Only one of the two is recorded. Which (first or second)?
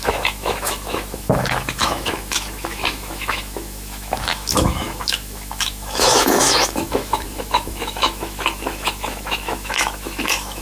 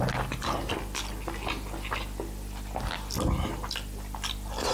second